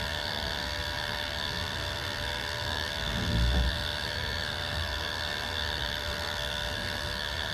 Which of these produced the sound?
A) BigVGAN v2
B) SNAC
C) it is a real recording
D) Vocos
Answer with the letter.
B